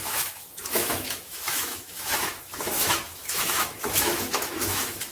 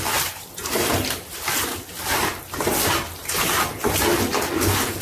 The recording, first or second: second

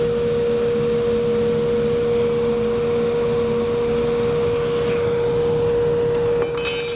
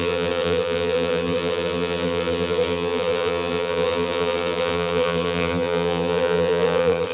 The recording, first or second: first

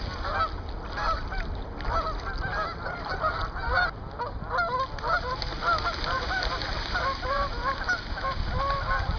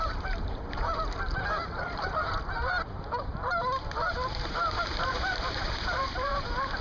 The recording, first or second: first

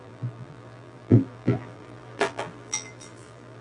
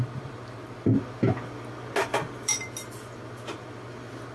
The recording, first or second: second